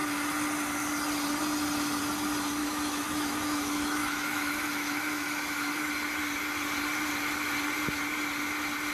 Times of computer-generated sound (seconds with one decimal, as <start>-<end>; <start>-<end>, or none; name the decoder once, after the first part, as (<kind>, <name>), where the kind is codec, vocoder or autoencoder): 2.6-5.9 (autoencoder, DAC-VAE)